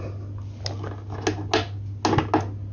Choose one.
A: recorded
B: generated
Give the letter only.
A